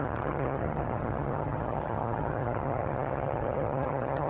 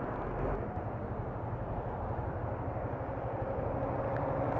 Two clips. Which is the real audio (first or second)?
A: second